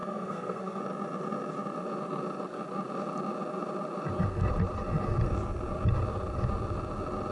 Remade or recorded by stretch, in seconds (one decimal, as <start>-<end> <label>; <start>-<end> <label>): 0.0-0.8 remade; 0.8-7.3 recorded